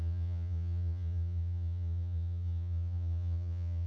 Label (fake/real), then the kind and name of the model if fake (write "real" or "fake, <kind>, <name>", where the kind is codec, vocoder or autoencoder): fake, vocoder, Vocos